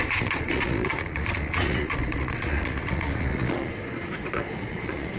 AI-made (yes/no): yes